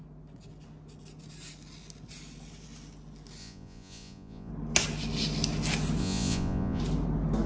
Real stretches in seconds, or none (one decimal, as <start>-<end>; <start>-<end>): 0.0-3.4; 4.5-6.0; 6.8-7.5